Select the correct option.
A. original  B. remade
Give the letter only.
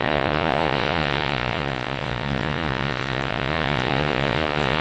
B